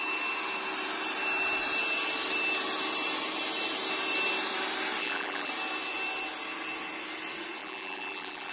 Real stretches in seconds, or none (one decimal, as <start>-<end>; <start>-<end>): 0.0-5.0; 5.5-7.6